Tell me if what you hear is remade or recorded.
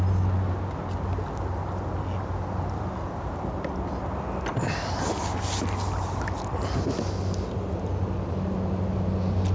recorded